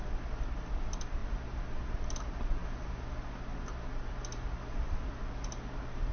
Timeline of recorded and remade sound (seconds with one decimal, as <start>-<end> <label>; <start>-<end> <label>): 0.0-6.1 recorded